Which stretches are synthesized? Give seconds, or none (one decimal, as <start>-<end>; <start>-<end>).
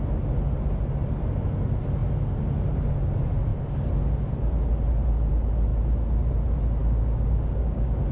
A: 6.8-8.1